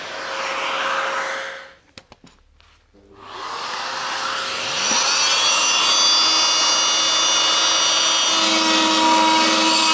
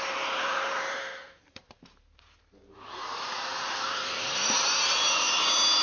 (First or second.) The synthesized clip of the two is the second